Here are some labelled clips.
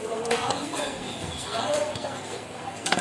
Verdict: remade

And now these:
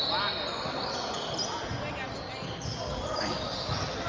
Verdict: recorded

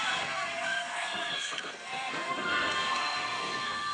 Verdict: remade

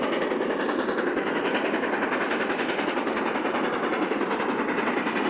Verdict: recorded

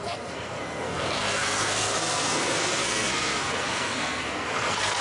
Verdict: remade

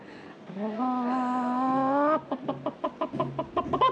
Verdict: recorded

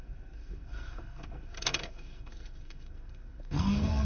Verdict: remade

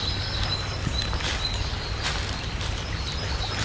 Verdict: recorded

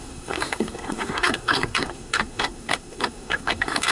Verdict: remade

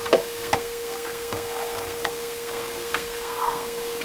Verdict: remade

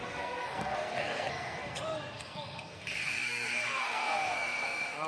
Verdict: remade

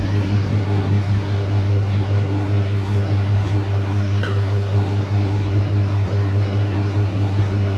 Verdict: remade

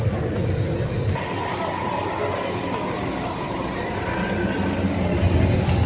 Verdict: recorded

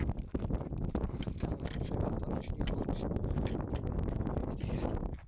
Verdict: recorded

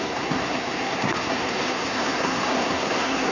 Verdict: remade